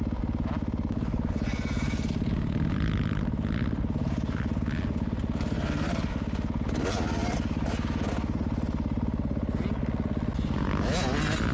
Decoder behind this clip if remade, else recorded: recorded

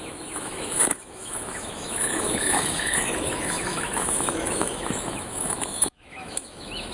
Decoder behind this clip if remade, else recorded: remade, autoencoder, DAC-VAE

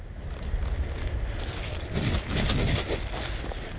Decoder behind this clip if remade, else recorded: recorded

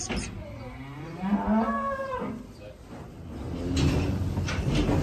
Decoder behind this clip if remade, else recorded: recorded